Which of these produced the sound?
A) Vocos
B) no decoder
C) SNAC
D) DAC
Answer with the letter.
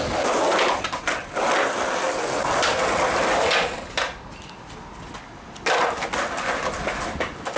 B